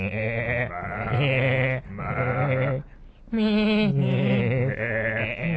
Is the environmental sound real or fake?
real